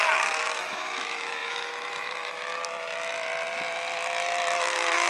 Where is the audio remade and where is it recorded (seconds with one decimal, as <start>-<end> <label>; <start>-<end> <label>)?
0.0-2.5 remade; 2.5-4.6 recorded; 4.6-5.1 remade